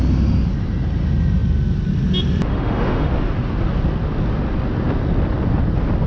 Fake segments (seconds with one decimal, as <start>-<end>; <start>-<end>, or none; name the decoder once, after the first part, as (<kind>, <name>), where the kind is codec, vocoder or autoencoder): 2.5-3.1 (autoencoder, DAC-VAE)